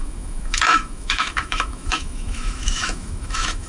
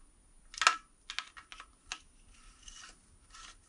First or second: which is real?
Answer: second